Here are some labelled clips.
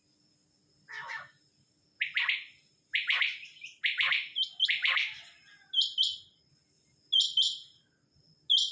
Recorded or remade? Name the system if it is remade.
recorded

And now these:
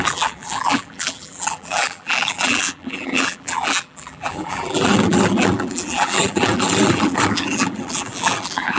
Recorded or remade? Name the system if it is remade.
remade, vocoder, BigVGAN v2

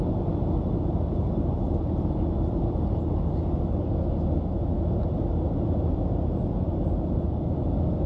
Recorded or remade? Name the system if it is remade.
recorded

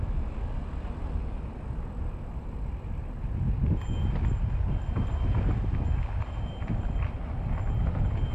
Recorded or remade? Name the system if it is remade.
recorded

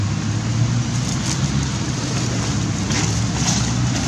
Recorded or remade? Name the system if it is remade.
recorded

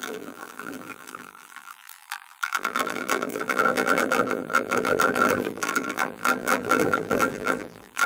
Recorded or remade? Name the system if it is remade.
remade, vocoder, BigVGAN v2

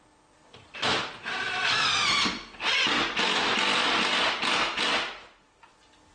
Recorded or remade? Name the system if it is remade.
recorded